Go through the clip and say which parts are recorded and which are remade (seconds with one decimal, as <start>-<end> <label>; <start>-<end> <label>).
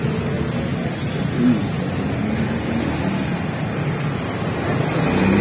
0.0-5.4 recorded